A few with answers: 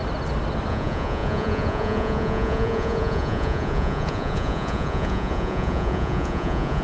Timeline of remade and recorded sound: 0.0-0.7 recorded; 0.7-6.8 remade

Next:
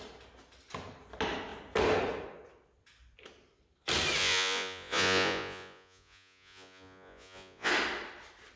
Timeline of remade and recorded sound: 0.0-4.2 recorded; 4.2-7.7 remade; 7.7-8.6 recorded

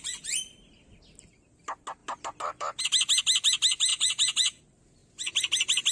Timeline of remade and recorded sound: 0.0-3.9 recorded; 3.9-4.6 remade; 4.6-5.9 recorded

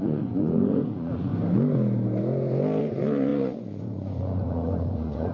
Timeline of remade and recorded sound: 0.0-1.3 remade; 1.3-2.8 recorded; 2.8-5.3 remade

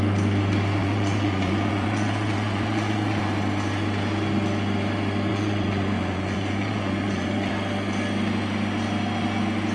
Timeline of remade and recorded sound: 0.0-0.8 recorded; 0.8-3.2 remade; 3.2-5.3 recorded; 5.3-7.5 remade; 7.5-9.7 recorded

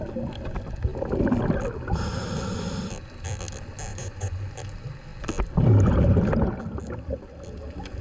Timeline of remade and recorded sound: 0.0-3.9 recorded; 3.9-4.4 remade; 4.4-8.0 recorded

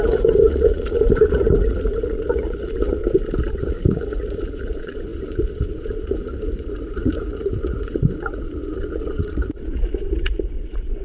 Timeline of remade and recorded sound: 0.0-3.0 remade; 3.0-3.5 recorded; 3.5-11.0 remade